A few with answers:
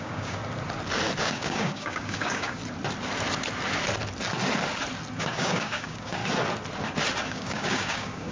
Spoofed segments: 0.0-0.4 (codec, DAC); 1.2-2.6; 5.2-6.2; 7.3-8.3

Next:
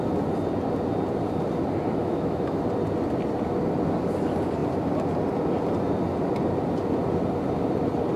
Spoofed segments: 2.0-2.6 (autoencoder, DAC-VAE)